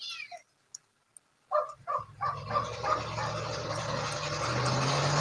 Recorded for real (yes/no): yes